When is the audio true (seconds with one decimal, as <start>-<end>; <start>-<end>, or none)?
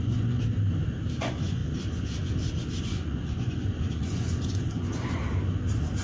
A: 0.4-1.2; 1.6-2.8; 5.2-6.0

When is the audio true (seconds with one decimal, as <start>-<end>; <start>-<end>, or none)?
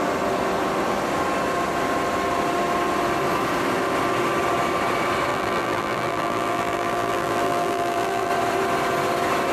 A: 0.0-5.3; 8.3-9.5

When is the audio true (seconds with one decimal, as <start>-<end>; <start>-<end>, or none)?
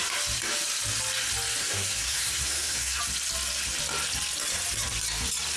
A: 0.0-1.6; 3.0-5.6